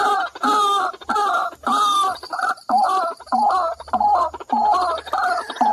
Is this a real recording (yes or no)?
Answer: no